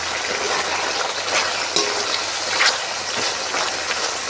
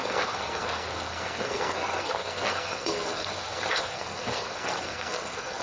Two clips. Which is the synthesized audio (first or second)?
second